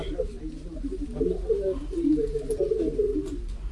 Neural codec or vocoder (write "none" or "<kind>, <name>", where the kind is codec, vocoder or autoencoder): none